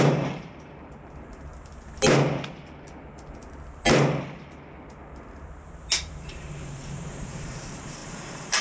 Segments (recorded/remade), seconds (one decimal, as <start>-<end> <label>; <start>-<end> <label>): 0.0-1.5 remade; 1.5-6.0 recorded; 6.0-8.6 remade